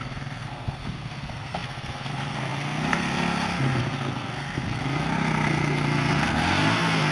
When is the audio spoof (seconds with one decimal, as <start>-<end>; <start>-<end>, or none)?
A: 0.0-7.1